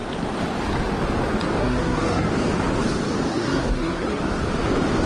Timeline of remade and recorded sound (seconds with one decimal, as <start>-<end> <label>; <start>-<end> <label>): 0.0-1.6 recorded; 1.6-2.3 remade; 2.3-3.3 recorded; 3.3-4.2 remade; 4.2-5.1 recorded